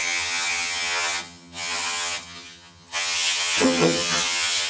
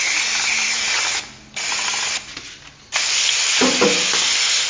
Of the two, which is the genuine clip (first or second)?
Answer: second